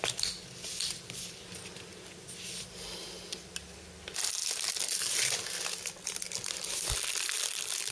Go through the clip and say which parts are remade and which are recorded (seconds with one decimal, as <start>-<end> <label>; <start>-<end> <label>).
0.0-7.9 recorded